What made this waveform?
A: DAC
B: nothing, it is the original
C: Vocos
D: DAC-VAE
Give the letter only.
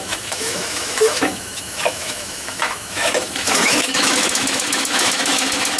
D